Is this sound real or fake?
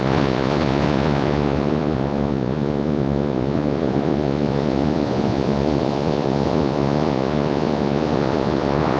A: fake